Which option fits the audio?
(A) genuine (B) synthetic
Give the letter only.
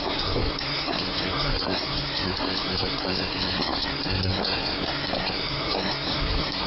B